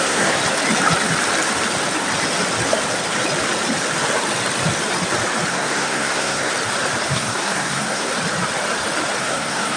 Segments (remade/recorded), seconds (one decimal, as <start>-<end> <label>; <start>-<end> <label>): 0.0-0.4 remade; 0.4-5.5 recorded; 5.5-6.5 remade; 6.5-7.1 recorded; 7.1-8.1 remade; 8.1-9.2 recorded; 9.2-9.8 remade